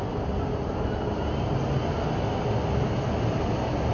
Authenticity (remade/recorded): recorded